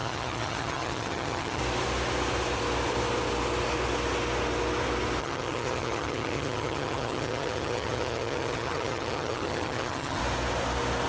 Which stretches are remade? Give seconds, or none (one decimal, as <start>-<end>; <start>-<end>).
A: 0.0-1.6; 5.2-10.2